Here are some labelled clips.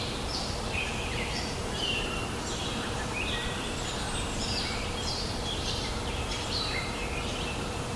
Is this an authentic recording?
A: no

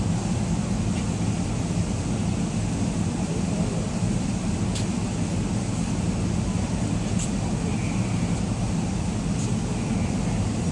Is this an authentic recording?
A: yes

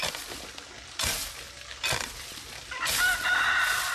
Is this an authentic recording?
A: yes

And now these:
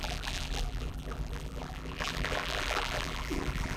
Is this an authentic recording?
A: no